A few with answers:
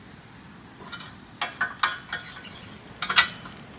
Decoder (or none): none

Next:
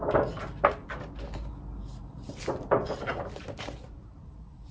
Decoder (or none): none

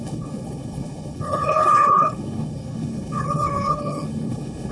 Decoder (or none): codec, HILCodec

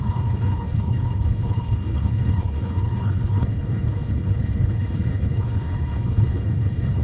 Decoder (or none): codec, HILCodec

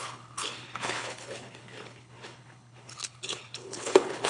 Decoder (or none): codec, HILCodec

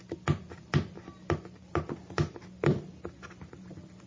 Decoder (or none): none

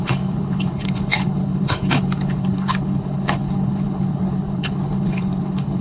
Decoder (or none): codec, HILCodec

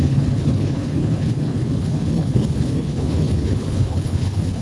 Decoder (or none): codec, HILCodec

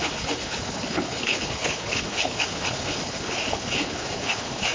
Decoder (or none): codec, HILCodec